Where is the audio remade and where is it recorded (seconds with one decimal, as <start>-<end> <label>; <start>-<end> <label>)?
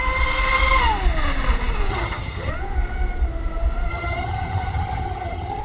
0.0-1.9 recorded; 1.9-2.5 remade; 2.5-3.9 recorded; 3.9-5.6 remade